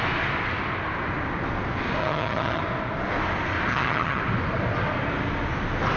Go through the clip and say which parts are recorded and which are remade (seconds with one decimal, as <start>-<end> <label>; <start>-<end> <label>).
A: 0.0-2.0 recorded; 2.0-2.6 remade; 2.6-3.7 recorded; 3.7-4.2 remade; 4.2-6.0 recorded